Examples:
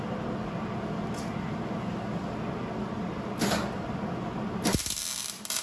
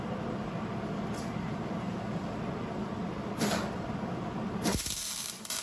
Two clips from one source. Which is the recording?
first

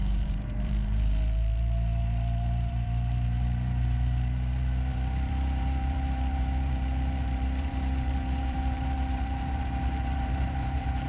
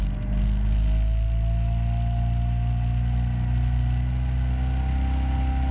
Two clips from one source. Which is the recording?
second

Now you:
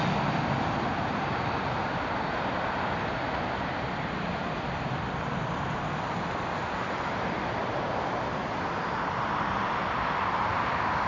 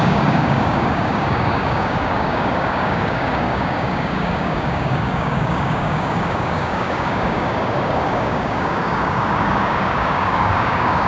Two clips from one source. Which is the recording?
first